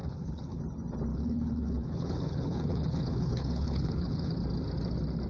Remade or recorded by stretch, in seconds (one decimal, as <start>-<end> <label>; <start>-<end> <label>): 0.0-0.6 remade; 0.6-1.1 recorded; 1.1-4.3 remade; 4.3-5.3 recorded